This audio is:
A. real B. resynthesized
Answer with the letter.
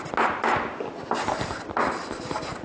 A